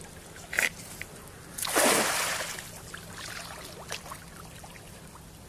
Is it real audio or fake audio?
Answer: real